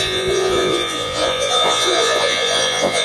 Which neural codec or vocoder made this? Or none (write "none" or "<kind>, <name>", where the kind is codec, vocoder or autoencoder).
vocoder, Vocos